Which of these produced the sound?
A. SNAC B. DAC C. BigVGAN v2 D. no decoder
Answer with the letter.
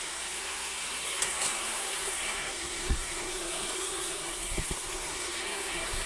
A